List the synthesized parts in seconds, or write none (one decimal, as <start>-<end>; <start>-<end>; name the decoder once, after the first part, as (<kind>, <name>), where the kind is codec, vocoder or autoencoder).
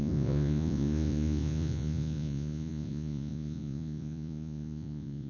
0.0-5.3 (vocoder, Vocos)